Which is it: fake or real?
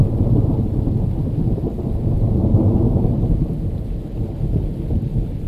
real